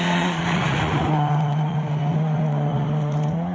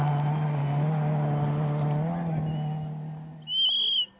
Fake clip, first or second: first